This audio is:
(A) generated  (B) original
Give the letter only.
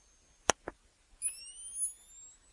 B